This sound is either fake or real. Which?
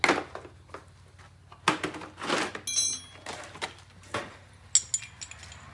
real